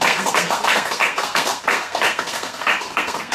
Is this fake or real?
fake